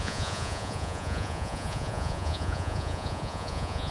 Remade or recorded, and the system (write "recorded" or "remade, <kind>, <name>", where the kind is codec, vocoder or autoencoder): remade, vocoder, Vocos